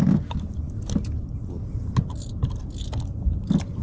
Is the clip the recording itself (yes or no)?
yes